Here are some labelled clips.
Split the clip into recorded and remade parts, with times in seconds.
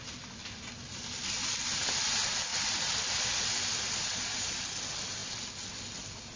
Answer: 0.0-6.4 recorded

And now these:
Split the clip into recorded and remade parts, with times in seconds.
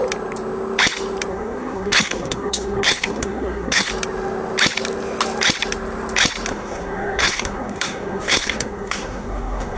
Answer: 0.0-1.3 recorded; 1.3-3.9 remade; 3.9-6.5 recorded; 6.5-9.8 remade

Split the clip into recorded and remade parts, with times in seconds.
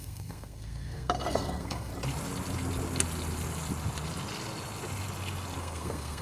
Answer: 0.0-1.9 remade; 1.9-5.6 recorded; 5.6-6.2 remade